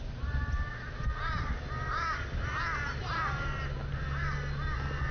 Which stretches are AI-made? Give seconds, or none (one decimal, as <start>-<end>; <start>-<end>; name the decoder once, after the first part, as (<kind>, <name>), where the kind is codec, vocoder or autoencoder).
none